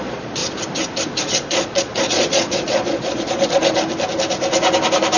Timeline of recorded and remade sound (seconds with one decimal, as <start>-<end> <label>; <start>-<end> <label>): 0.0-0.4 remade; 0.4-1.2 recorded; 1.2-3.6 remade; 3.6-5.2 recorded